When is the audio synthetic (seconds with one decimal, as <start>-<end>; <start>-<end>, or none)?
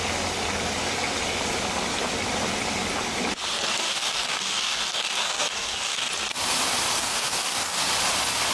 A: 3.7-6.1; 7.0-7.8